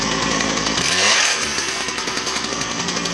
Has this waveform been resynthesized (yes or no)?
yes